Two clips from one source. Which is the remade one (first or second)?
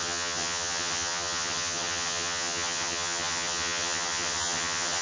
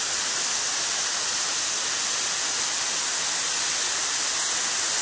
first